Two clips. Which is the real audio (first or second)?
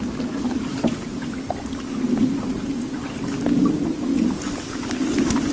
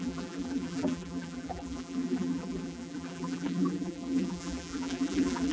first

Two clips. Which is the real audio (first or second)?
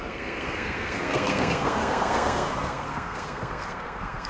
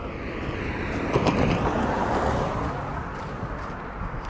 second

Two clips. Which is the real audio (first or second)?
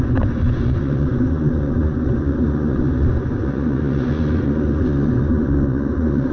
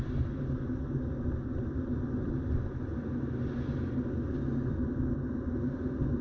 second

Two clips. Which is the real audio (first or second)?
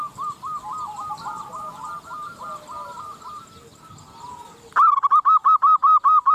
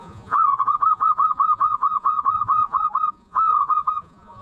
first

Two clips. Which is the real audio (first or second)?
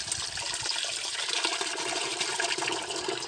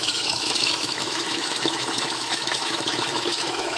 first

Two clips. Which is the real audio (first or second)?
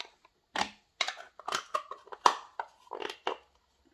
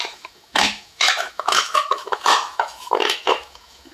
first